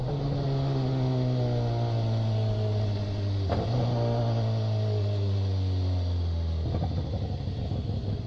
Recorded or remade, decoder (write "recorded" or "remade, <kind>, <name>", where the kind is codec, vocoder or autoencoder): recorded